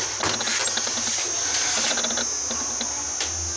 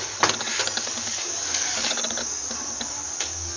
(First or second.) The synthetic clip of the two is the second